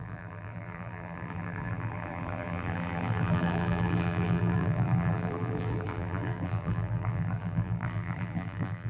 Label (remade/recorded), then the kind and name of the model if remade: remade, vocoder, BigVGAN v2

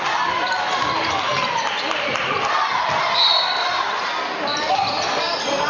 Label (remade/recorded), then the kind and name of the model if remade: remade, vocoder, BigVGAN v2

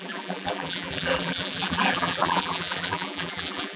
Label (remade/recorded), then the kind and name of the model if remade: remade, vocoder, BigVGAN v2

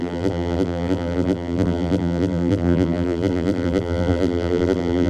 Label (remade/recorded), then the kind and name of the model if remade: remade, vocoder, BigVGAN v2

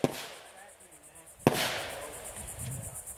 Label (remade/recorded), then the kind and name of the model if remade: recorded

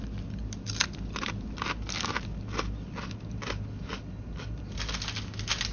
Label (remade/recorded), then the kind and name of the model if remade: recorded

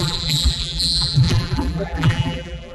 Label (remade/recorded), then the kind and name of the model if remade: remade, vocoder, BigVGAN v2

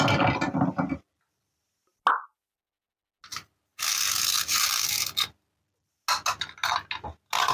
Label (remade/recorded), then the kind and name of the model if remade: recorded